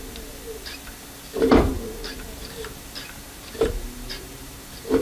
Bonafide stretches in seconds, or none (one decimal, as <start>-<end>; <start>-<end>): 0.0-1.7; 2.2-3.2